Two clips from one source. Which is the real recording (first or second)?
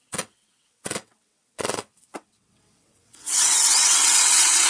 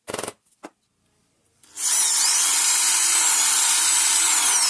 second